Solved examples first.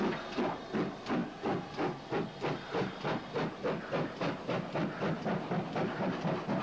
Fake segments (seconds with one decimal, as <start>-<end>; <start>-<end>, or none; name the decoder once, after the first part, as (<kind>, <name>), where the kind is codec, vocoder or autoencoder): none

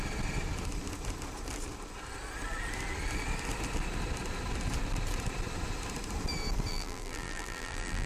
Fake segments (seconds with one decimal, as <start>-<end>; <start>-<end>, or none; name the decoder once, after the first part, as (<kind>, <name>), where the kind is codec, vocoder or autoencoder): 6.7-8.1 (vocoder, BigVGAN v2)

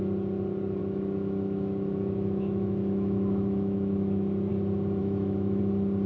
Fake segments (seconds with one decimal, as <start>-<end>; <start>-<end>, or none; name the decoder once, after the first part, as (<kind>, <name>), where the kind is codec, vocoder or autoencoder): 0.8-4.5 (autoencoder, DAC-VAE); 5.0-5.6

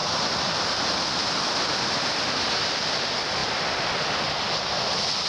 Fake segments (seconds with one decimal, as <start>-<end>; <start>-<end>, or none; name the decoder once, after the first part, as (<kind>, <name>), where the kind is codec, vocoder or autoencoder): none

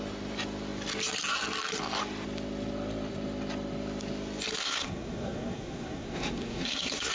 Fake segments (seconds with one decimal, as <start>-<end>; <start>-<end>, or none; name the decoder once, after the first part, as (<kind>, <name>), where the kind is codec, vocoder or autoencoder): 4.6-7.1 (codec, SNAC)

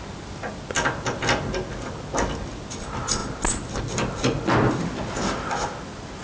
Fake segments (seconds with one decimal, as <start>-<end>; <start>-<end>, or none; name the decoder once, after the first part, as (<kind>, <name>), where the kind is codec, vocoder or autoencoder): none

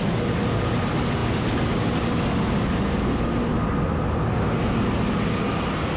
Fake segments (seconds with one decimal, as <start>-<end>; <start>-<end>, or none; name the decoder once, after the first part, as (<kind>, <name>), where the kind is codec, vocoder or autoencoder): none

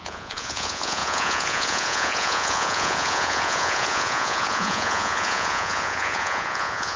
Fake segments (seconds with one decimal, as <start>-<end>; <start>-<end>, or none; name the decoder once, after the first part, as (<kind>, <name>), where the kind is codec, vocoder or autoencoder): 0.0-7.0 (vocoder, Vocos)